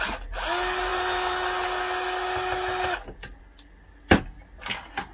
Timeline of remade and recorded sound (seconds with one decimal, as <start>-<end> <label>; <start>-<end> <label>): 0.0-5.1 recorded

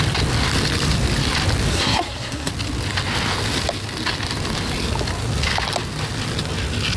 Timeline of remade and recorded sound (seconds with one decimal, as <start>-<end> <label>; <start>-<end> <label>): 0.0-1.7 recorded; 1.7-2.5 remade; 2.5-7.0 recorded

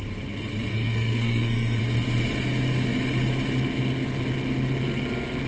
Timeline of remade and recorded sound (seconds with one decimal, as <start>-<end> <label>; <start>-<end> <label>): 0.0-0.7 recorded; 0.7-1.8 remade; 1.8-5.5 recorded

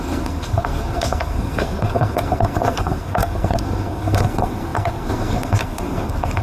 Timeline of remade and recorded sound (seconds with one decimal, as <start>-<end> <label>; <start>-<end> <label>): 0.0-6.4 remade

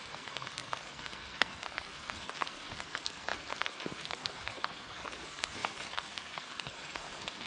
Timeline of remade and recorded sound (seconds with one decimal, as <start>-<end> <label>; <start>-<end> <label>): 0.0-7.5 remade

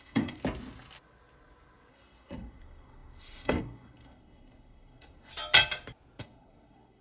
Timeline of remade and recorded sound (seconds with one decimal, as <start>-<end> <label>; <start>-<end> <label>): 0.0-0.4 remade; 0.4-1.9 recorded; 1.9-5.3 remade; 5.3-6.2 recorded; 6.2-7.0 remade

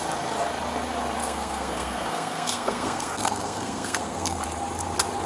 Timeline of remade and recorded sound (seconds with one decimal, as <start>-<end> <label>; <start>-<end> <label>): 0.0-1.2 recorded; 1.2-4.4 remade; 4.4-5.3 recorded